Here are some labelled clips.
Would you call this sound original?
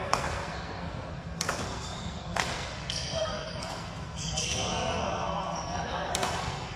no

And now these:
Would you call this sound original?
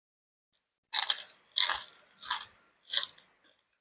yes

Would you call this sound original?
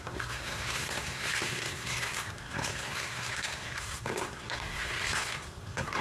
no